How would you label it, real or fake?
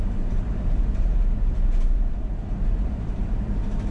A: fake